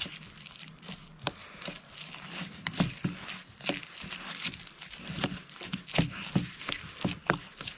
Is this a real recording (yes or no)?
yes